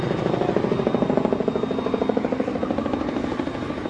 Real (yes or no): yes